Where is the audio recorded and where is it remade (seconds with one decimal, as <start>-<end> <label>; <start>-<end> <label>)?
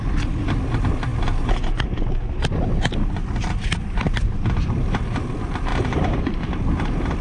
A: 0.0-1.1 remade; 1.1-3.6 recorded; 3.6-5.7 remade; 5.7-6.2 recorded; 6.2-7.2 remade